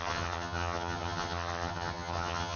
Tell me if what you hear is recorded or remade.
remade